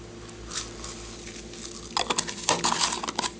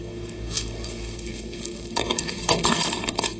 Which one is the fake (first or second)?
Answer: second